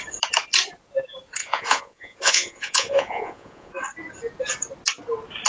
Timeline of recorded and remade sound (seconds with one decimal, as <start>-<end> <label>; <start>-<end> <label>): 0.0-1.4 recorded; 1.4-3.7 remade; 3.7-5.5 recorded